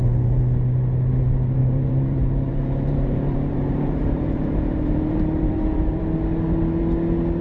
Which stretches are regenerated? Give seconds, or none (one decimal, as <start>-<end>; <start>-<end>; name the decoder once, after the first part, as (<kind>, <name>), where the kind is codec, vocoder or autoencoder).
1.6-6.0 (vocoder, BigVGAN v2)